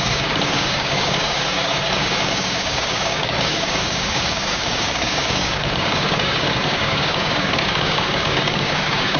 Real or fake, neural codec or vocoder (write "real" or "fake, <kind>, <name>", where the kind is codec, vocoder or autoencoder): fake, codec, DAC